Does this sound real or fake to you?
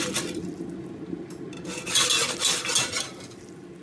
real